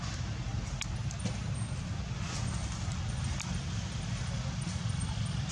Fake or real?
real